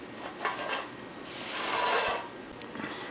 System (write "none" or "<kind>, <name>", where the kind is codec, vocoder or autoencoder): none